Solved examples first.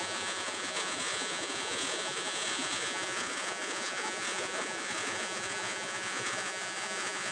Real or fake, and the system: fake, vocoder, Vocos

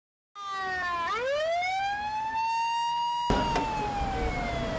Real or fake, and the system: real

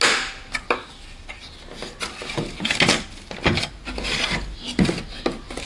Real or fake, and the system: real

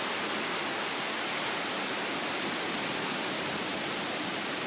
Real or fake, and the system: real